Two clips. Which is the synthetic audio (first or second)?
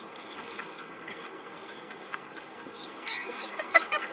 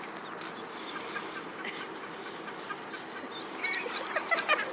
first